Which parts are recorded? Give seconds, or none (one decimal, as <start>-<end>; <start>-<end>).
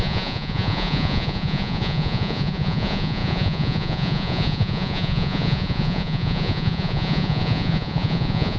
none